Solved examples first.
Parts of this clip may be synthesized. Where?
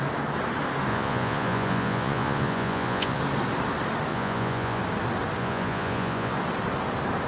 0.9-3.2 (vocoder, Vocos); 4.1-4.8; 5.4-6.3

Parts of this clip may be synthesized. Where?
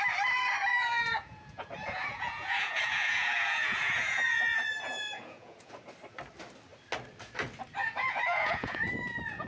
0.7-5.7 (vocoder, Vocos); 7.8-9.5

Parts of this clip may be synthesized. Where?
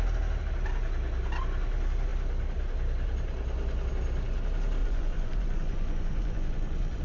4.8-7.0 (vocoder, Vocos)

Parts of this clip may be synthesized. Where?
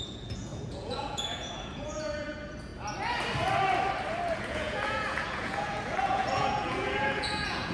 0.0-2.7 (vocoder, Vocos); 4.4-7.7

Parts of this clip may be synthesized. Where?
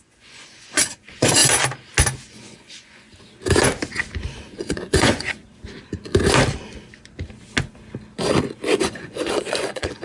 0.0-1.4 (vocoder, Vocos); 2.3-3.1; 4.4-5.4; 8.8-10.0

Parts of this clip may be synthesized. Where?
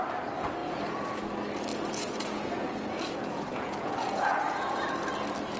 0.6-1.2 (vocoder, Vocos); 1.7-5.1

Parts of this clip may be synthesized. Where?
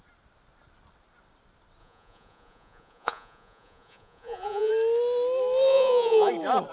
1.8-4.7 (vocoder, Vocos); 5.7-6.3